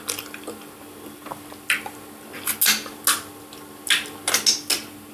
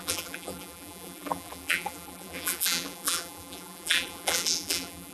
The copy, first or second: second